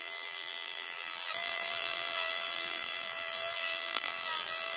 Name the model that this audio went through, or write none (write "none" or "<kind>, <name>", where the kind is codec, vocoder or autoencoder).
vocoder, BigVGAN v2